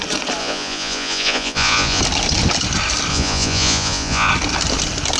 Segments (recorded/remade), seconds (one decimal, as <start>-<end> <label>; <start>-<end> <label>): 0.0-0.4 recorded; 0.4-2.0 remade; 2.0-3.1 recorded; 3.1-4.3 remade; 4.3-5.2 recorded